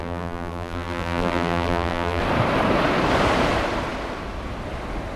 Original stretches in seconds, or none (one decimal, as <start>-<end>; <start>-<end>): 2.2-5.2